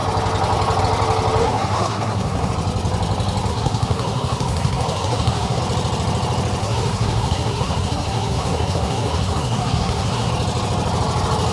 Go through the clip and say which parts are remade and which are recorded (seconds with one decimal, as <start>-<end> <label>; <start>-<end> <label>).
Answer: 0.0-1.4 recorded; 1.4-2.5 remade; 2.5-3.5 recorded; 3.5-5.6 remade; 5.6-6.6 recorded; 6.6-10.3 remade; 10.3-11.5 recorded